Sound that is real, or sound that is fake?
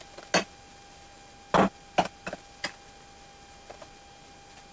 real